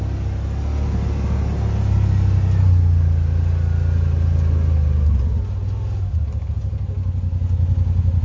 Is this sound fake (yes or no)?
no